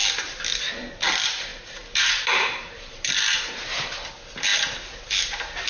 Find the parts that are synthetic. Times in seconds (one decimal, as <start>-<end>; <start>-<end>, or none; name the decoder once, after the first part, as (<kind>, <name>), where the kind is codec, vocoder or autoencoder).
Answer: 1.5-4.1 (vocoder, BigVGAN v2)